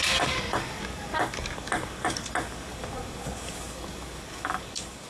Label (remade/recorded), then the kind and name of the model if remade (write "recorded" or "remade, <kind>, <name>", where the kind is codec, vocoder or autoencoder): remade, codec, DAC